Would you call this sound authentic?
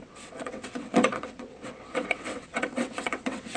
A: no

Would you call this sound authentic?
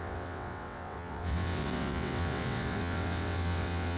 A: no